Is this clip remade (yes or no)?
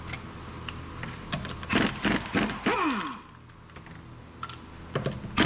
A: no